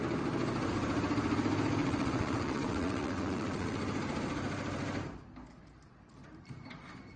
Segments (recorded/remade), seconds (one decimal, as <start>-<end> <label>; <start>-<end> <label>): 0.0-1.8 recorded; 1.8-3.8 remade; 3.8-7.2 recorded